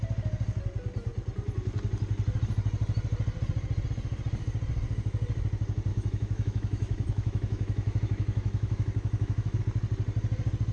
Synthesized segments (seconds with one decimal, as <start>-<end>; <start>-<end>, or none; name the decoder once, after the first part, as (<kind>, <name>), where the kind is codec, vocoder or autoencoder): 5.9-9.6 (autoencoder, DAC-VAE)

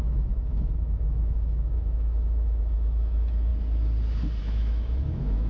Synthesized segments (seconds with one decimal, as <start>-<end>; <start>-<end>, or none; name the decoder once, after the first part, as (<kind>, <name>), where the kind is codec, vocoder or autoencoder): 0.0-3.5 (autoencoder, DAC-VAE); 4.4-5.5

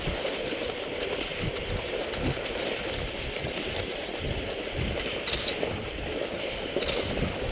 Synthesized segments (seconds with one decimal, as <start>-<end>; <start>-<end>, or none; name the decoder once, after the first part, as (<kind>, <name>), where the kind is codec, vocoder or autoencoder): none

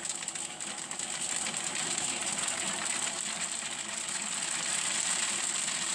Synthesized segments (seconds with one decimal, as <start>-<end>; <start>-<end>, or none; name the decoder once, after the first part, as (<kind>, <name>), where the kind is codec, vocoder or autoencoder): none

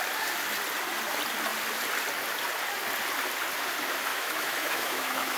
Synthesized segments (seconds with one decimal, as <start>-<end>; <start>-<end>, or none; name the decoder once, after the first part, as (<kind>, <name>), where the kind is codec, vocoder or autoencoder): 4.1-5.4 (autoencoder, DAC-VAE)

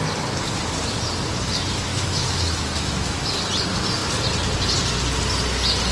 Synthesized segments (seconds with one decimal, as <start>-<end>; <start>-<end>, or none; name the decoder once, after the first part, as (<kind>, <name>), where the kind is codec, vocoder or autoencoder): 1.9-3.2 (autoencoder, DAC-VAE)

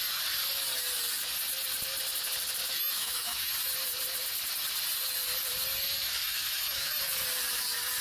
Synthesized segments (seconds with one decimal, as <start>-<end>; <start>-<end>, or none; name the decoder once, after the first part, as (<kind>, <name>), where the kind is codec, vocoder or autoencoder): 2.6-3.5 (autoencoder, DAC-VAE); 6.2-7.0

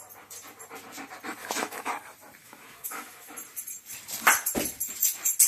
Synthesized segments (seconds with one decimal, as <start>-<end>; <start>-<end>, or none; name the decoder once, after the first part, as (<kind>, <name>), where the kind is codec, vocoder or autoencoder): 1.4-1.9 (autoencoder, DAC-VAE); 2.4-3.3